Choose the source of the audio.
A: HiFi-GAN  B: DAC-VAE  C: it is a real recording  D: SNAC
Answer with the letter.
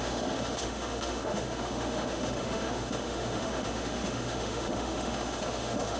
B